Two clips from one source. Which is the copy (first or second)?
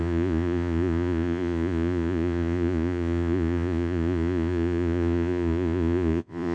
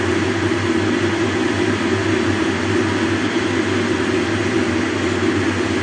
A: first